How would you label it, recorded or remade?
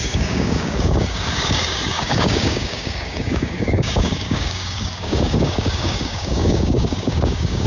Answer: remade